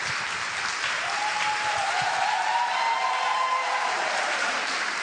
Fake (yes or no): yes